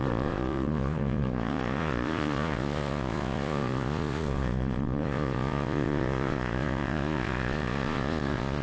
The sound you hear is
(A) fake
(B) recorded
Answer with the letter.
A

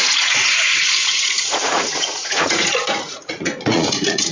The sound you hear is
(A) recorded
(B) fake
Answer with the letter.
B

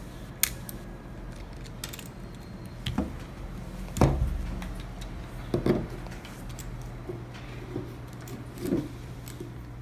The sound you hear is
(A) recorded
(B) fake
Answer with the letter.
A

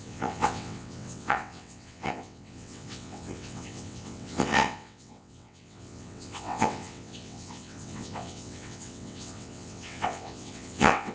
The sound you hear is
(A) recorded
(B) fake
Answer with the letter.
B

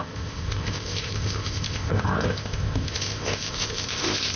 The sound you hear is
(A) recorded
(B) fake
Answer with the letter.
B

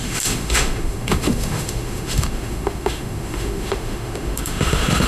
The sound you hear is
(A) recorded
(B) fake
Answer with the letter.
B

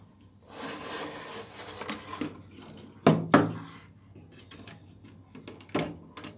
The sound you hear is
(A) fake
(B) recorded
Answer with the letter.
B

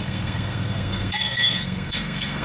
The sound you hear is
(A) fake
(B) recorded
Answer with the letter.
A